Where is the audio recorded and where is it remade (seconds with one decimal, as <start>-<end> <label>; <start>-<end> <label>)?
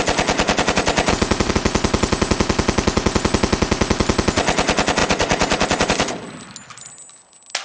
0.0-7.6 recorded